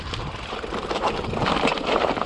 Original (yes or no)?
no